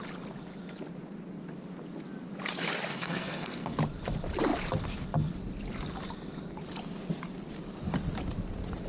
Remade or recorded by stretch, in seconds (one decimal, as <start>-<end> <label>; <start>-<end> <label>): 0.0-2.9 recorded; 2.9-3.8 remade; 3.8-8.9 recorded